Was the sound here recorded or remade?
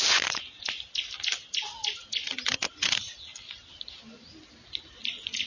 recorded